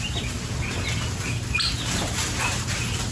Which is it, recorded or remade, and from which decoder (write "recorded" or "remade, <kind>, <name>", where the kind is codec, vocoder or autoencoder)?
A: recorded